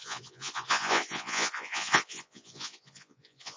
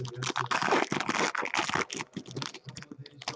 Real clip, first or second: second